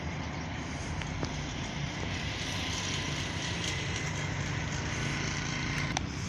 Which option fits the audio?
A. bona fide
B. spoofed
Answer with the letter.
A